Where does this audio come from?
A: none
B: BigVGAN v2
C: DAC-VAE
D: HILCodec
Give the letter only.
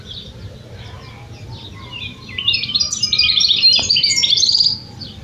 A